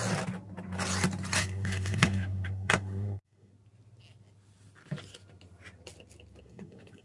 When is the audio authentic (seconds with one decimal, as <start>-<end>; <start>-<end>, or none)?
0.0-1.4; 3.5-6.4